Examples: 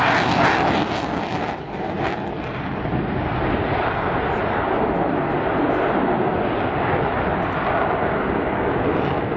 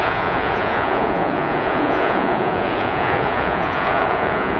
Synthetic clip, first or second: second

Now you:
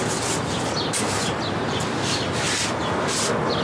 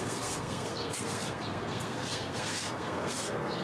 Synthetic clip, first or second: second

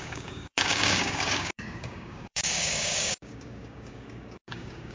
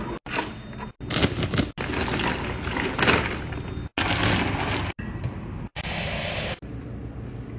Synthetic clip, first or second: first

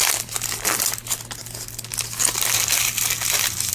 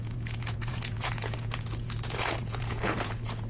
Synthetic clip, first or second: second